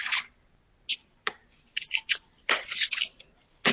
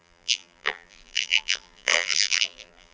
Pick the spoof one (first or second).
second